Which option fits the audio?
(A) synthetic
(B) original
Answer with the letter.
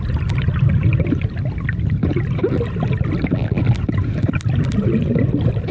B